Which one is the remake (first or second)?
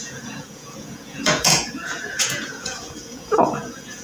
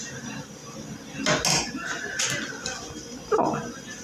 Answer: first